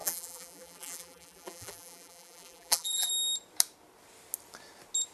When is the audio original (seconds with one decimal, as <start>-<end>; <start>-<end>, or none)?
3.1-5.1

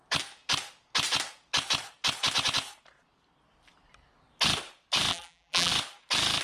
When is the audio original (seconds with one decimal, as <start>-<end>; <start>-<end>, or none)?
0.0-5.1; 5.7-6.4

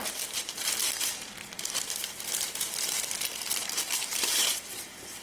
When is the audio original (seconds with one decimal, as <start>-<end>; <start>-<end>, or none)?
0.0-3.5

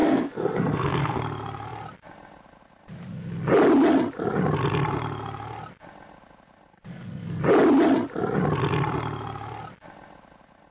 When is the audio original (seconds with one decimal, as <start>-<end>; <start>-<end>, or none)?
1.2-6.9; 7.4-10.7

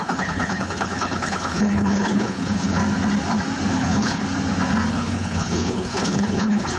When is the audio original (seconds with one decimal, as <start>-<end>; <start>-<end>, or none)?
2.8-3.7; 4.2-4.9

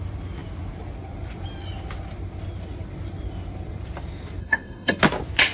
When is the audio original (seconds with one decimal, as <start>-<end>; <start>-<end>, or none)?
0.0-4.4; 5.0-5.5

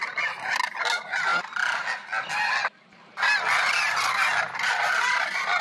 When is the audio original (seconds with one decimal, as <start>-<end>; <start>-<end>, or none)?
0.0-5.6

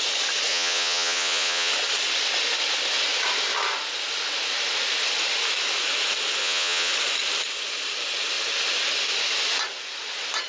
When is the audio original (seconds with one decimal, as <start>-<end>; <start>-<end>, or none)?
0.0-0.5; 1.7-6.4; 6.9-10.5